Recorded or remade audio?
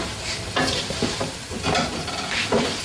recorded